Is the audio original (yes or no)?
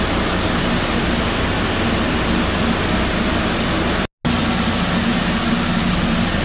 yes